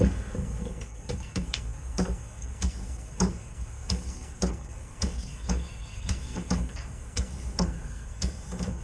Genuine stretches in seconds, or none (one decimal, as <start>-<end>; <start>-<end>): none